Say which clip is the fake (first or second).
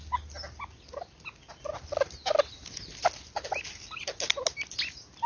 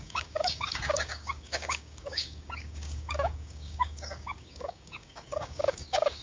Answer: second